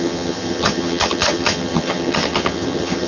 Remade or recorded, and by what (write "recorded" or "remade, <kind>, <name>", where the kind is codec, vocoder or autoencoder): remade, vocoder, HiFi-GAN